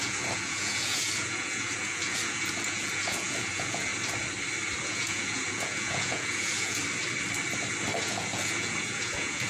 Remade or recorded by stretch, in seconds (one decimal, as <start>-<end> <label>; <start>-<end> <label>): 0.0-3.9 remade; 3.9-4.8 recorded; 4.8-6.8 remade; 6.8-8.0 recorded; 8.0-9.5 remade